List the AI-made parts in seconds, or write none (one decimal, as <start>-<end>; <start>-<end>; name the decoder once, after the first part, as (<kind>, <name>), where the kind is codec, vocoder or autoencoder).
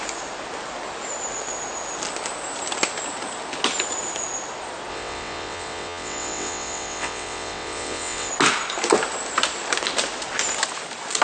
4.9-8.3 (vocoder, WaveNeXt)